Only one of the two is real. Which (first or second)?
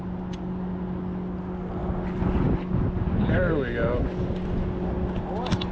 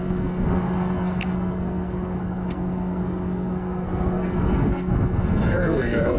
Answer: first